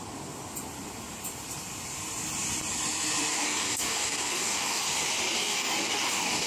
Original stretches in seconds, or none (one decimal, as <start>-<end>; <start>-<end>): 0.0-3.3; 4.8-5.4